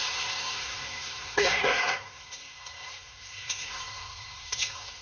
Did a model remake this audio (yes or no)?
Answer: yes